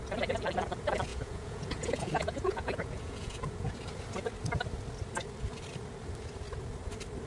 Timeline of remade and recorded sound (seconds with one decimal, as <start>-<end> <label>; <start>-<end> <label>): 0.0-1.1 recorded; 1.1-3.9 remade; 3.9-7.3 recorded